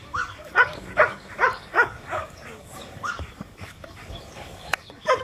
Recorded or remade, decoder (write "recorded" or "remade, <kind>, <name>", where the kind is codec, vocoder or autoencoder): remade, codec, DAC